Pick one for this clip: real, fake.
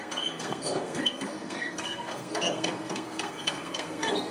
fake